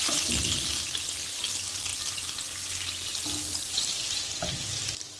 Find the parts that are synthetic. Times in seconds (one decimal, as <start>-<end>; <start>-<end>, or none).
none